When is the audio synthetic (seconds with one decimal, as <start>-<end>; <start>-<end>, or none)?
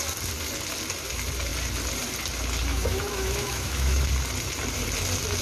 2.7-4.0